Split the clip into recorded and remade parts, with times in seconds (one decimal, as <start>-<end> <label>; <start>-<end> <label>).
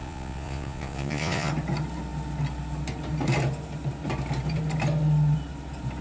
0.0-1.5 remade; 1.5-6.0 recorded